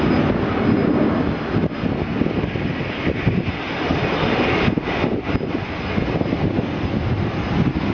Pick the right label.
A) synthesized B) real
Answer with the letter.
B